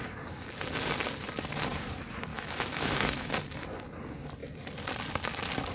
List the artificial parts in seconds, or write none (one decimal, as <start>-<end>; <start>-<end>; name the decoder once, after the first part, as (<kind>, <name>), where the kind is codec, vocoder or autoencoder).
2.3-3.3 (autoencoder, DAC-VAE)